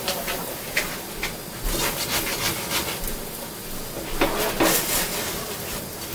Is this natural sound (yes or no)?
yes